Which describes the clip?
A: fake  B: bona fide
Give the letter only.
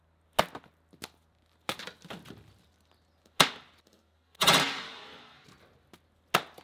B